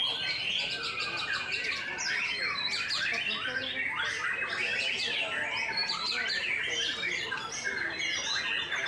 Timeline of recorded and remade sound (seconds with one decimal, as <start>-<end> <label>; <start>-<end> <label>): 0.0-8.9 recorded